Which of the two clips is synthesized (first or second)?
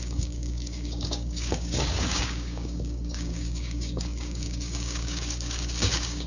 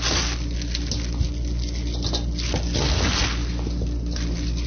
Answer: first